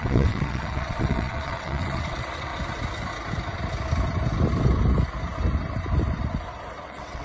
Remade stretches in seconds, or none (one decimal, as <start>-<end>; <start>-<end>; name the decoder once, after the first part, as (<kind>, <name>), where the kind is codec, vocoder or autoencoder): 0.0-2.5 (vocoder, WaveNeXt); 6.8-7.2

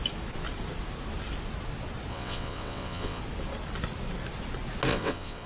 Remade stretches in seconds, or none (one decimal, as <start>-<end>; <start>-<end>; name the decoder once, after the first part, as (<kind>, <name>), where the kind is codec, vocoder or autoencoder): 2.1-3.2 (vocoder, WaveNeXt); 4.9-5.5

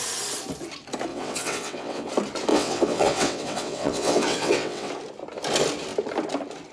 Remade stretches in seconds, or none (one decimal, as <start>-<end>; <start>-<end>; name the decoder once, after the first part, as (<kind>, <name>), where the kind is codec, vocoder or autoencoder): 1.1-2.1 (vocoder, WaveNeXt); 2.5-4.9

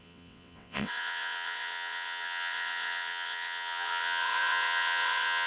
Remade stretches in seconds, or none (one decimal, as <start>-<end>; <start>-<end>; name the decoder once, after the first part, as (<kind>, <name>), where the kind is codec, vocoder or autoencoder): 0.0-5.5 (vocoder, WaveNeXt)

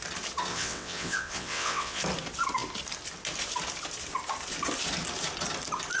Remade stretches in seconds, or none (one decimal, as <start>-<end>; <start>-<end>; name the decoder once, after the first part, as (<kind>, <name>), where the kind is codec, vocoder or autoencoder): 0.5-2.0 (vocoder, WaveNeXt)

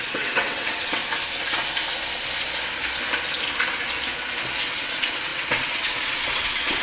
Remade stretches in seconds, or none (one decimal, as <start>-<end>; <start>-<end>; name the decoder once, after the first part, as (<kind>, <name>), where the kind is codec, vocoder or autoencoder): 0.0-1.0 (vocoder, WaveNeXt); 4.6-6.8

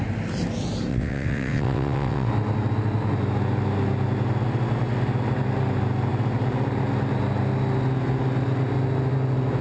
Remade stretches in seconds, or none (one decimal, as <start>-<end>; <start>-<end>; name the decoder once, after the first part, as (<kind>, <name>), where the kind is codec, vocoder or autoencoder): 0.9-2.3 (vocoder, WaveNeXt)

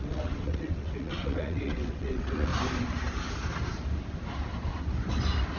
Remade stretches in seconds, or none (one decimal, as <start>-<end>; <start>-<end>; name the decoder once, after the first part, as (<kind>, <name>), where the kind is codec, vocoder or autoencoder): 0.0-2.5 (vocoder, WaveNeXt)